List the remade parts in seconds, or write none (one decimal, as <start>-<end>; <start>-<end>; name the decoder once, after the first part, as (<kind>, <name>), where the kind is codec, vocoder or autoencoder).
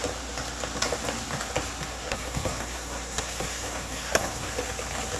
1.9-4.5 (codec, SNAC)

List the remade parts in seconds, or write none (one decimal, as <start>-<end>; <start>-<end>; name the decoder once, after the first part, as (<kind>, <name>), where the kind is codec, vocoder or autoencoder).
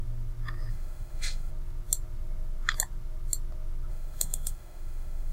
0.7-1.5 (autoencoder, DAC-VAE); 3.9-5.3